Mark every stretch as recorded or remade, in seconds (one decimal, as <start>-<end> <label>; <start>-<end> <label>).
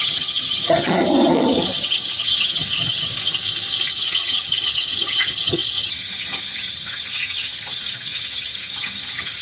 0.0-3.1 remade; 3.1-3.9 recorded; 3.9-9.4 remade